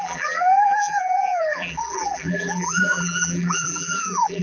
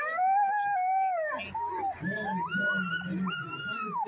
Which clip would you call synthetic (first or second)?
first